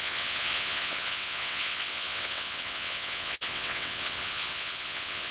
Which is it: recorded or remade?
remade